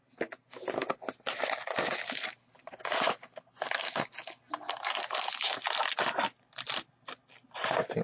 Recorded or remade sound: recorded